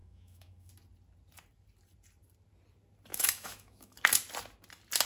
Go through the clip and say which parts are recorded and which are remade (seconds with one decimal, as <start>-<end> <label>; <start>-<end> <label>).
0.0-0.7 remade; 0.7-3.1 recorded; 3.1-4.0 remade; 4.0-5.1 recorded